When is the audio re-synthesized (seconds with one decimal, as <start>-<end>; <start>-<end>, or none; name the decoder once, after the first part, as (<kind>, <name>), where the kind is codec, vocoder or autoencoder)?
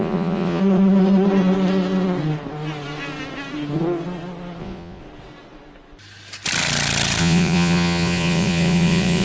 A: 0.0-0.6 (vocoder, Vocos); 4.6-5.0; 7.2-9.2